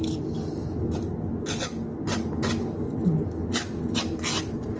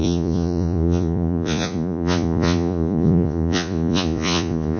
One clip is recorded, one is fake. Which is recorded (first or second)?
first